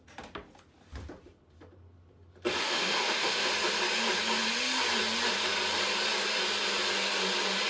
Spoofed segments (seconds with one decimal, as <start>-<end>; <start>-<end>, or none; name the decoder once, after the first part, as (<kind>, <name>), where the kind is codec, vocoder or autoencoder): 2.6-3.5 (autoencoder, DAC-VAE)